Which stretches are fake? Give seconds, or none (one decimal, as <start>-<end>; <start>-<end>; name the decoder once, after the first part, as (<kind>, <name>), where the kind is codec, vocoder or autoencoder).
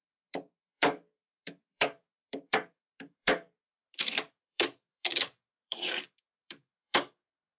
0.0-7.6 (codec, DAC)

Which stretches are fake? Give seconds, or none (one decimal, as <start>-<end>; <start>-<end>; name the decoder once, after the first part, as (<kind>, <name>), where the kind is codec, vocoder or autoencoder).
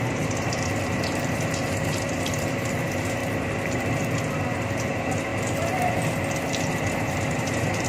0.0-3.2 (vocoder, BigVGAN v2); 4.7-5.3; 7.0-7.9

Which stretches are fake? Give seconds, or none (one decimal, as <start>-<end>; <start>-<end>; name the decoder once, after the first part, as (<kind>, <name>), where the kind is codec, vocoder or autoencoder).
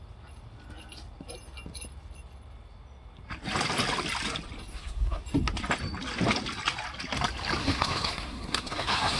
4.7-5.2 (codec, SNAC); 7.6-9.2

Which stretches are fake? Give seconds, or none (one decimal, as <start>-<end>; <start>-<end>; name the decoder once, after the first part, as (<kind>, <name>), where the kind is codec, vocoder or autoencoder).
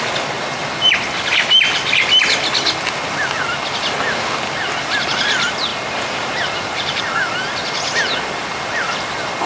5.7-7.0 (vocoder, BigVGAN v2)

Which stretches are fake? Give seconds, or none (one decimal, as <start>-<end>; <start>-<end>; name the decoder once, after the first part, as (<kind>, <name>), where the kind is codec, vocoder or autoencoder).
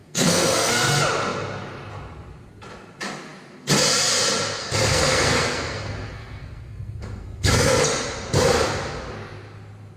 0.0-0.7 (codec, SNAC); 4.6-7.8